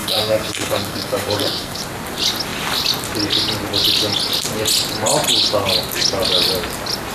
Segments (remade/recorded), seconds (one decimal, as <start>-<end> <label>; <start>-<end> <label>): 0.0-1.8 remade; 1.8-7.1 recorded